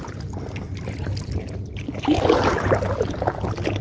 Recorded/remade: recorded